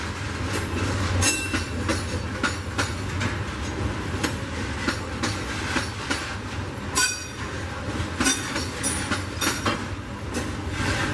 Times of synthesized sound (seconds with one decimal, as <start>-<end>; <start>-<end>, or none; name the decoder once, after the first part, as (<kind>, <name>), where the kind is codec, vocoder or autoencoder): none